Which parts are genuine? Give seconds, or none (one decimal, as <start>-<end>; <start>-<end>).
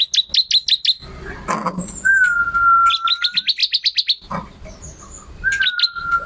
0.0-6.3